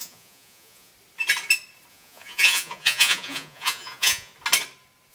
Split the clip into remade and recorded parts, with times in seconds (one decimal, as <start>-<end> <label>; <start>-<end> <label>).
0.0-0.9 remade; 0.9-1.9 recorded; 1.9-4.3 remade; 4.3-5.1 recorded